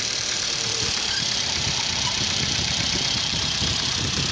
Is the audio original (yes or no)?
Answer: no